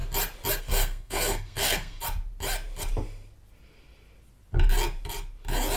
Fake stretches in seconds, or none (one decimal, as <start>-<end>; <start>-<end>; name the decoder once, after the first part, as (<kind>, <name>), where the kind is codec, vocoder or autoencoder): 0.6-2.0 (codec, SNAC)